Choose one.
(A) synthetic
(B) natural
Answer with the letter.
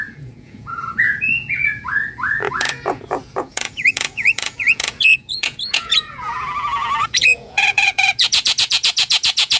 A